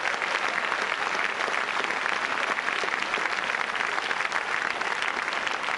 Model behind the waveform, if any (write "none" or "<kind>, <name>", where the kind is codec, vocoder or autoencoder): none